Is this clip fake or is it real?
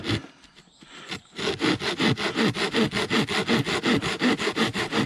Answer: real